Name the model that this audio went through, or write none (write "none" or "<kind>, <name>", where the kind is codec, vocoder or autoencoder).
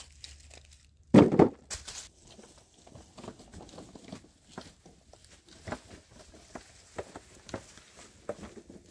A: none